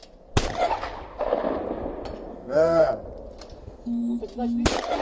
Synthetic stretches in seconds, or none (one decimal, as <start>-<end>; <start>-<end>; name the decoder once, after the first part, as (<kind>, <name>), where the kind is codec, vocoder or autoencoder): 2.3-2.9 (codec, SNAC); 3.6-4.2